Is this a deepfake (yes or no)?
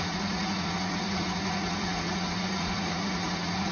yes